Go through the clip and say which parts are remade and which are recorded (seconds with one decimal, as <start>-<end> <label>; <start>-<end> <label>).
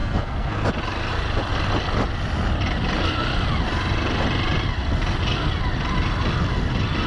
0.0-0.7 remade; 0.7-7.1 recorded